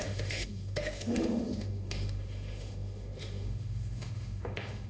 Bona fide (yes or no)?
no